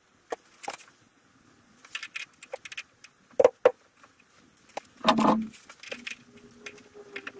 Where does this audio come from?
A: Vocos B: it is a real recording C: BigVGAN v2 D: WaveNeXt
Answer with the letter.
B